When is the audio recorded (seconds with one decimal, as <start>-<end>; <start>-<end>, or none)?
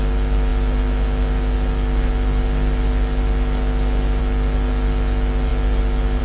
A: 0.0-6.2